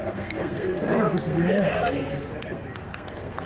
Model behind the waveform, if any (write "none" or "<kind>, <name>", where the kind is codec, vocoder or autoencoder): codec, SNAC